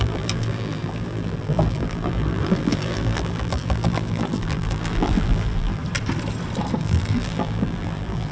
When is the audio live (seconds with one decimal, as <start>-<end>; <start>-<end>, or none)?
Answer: 5.8-6.8